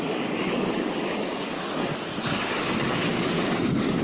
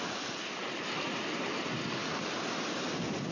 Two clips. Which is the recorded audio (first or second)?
second